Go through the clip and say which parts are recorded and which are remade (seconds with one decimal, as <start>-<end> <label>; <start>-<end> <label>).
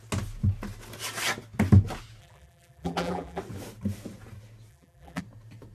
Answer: 0.0-2.2 recorded; 2.2-3.4 remade; 3.4-4.7 recorded; 4.7-5.2 remade; 5.2-5.7 recorded